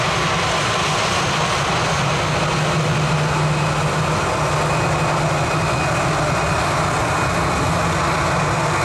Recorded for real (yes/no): yes